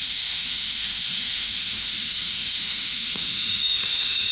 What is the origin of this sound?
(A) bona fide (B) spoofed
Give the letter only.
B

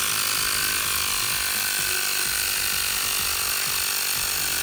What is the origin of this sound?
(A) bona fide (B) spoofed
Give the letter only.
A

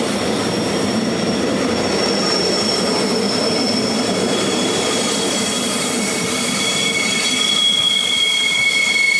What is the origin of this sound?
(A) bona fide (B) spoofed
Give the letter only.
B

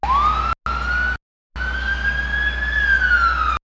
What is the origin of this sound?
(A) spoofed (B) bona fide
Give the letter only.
B